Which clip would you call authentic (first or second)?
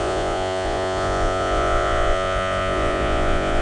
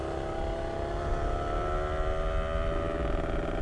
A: second